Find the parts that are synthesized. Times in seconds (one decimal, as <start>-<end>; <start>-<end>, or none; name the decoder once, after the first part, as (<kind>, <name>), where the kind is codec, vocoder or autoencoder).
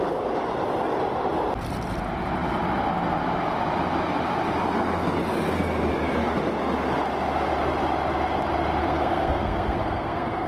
8.8-10.5 (codec, SNAC)